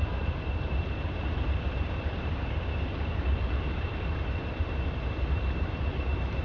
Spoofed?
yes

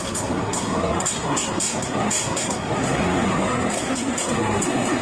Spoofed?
yes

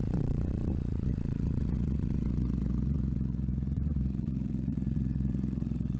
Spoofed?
yes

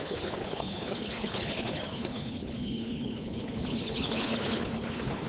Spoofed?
yes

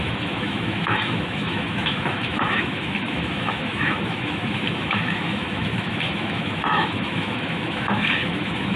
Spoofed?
yes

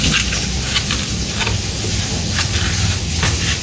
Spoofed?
no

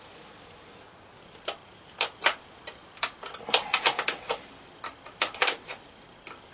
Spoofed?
no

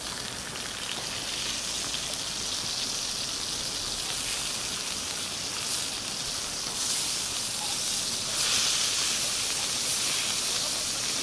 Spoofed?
no